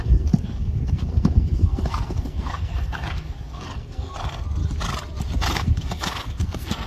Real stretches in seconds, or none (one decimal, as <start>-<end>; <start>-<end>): 4.6-5.5